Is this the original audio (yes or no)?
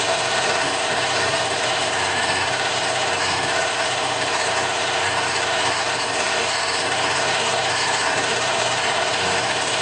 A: no